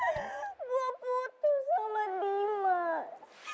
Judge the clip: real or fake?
real